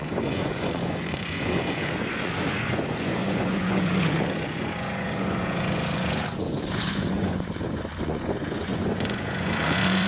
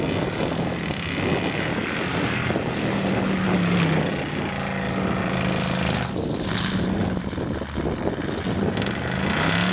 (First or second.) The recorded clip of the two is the second